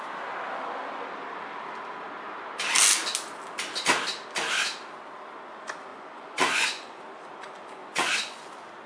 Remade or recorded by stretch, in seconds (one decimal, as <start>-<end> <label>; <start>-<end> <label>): 0.0-5.9 recorded; 5.9-7.0 remade; 7.0-7.8 recorded; 7.8-8.5 remade; 8.5-8.9 recorded

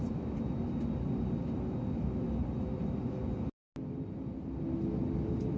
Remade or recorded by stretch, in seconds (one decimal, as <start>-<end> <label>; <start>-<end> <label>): 0.0-5.6 recorded

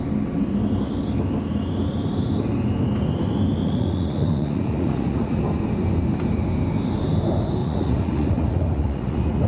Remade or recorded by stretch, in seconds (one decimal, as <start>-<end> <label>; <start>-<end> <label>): 0.0-3.6 recorded; 3.6-5.4 remade; 5.4-7.6 recorded; 7.6-9.5 remade

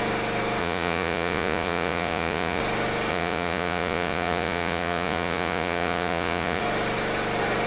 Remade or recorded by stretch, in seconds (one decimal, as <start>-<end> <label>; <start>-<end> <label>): 0.0-0.6 recorded; 0.6-2.6 remade; 2.6-3.1 recorded; 3.1-6.6 remade; 6.6-7.7 recorded

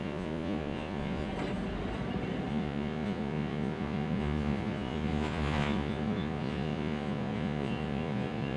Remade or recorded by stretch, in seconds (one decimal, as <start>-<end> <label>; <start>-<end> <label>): 0.0-1.3 remade; 1.3-2.5 recorded; 2.5-8.6 remade

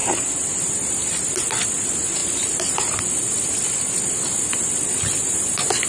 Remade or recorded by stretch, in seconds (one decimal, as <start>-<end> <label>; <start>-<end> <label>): 0.0-5.9 recorded

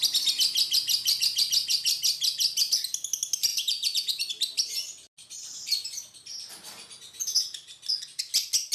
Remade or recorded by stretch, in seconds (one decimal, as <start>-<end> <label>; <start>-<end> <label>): 0.0-3.5 recorded; 3.5-4.3 remade; 4.3-8.7 recorded

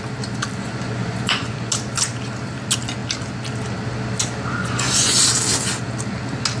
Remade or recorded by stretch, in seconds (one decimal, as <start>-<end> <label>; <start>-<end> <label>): 0.0-0.6 recorded; 0.6-1.7 remade; 1.7-4.6 recorded; 4.6-5.2 remade; 5.2-6.6 recorded